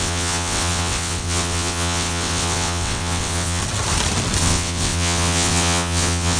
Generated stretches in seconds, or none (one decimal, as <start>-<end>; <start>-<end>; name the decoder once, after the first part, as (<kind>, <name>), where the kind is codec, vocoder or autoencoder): 0.0-3.6 (vocoder, WaveNeXt); 4.4-6.4